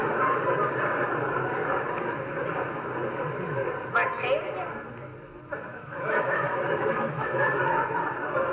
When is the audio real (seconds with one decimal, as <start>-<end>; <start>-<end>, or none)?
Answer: 0.0-5.7; 7.6-8.5